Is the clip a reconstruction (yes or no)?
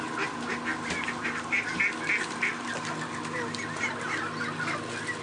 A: no